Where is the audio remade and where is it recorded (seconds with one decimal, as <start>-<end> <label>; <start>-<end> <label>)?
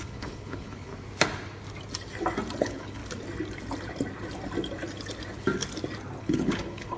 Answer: 0.0-0.9 remade; 0.9-2.6 recorded; 2.6-3.0 remade; 3.0-6.2 recorded; 6.2-7.0 remade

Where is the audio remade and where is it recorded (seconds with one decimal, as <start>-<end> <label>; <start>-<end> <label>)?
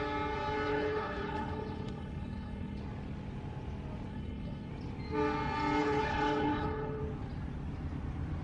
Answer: 0.0-0.7 recorded; 0.7-2.8 remade; 2.8-4.1 recorded; 4.1-4.7 remade; 4.7-5.8 recorded; 5.8-7.0 remade; 7.0-8.4 recorded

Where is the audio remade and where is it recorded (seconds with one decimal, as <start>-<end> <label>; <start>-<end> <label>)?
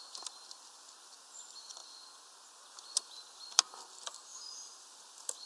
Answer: 0.0-5.5 recorded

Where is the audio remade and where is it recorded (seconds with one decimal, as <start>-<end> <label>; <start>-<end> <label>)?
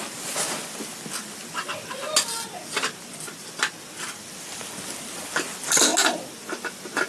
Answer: 0.0-7.1 recorded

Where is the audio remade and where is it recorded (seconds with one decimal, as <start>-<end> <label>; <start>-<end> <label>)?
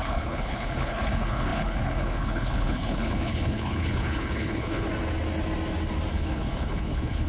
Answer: 0.0-4.9 remade; 4.9-6.1 recorded; 6.1-7.3 remade